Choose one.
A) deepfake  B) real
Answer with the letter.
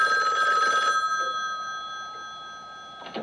B